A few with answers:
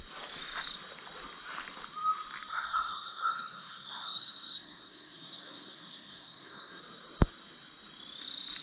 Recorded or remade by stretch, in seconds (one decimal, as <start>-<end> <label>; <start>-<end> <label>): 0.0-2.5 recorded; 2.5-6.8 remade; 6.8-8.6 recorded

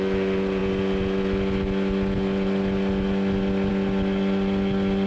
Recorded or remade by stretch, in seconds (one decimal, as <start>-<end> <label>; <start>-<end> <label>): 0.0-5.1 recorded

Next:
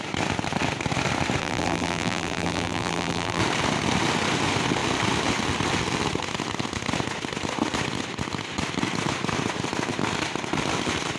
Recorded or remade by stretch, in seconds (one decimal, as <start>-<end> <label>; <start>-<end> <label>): 0.0-1.4 recorded; 1.4-3.4 remade; 3.4-11.2 recorded

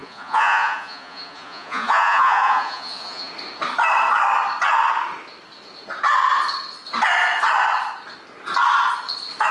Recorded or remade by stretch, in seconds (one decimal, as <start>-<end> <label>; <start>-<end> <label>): 0.0-3.3 remade; 3.3-9.5 recorded